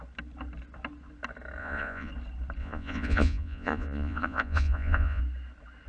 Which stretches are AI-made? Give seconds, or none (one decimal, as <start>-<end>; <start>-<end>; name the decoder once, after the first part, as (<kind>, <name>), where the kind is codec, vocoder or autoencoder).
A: 1.6-2.1 (vocoder, Vocos); 2.6-5.2